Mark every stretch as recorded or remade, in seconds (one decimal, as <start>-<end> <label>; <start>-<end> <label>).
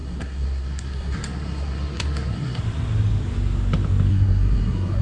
0.0-2.6 remade; 2.6-4.1 recorded; 4.1-5.0 remade